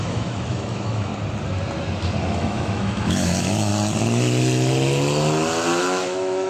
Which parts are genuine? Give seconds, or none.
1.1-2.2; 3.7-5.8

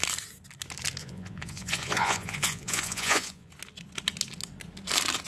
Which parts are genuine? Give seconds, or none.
0.0-1.0; 3.5-5.3

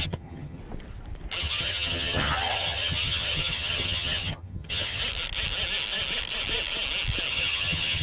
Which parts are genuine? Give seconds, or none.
0.6-1.4; 5.0-7.3

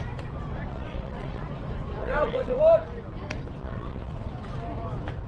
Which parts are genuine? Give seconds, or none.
0.0-0.7; 1.4-2.0; 2.6-3.6; 4.3-5.3

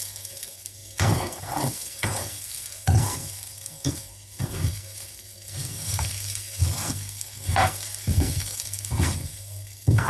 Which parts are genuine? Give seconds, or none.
none

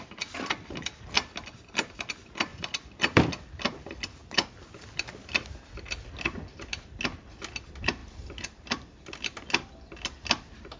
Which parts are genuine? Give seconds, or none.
0.0-2.5; 3.2-8.0; 8.5-10.8

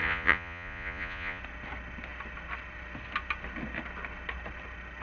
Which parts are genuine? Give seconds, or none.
1.4-5.0

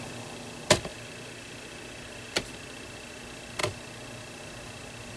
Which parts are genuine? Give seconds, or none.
0.0-5.2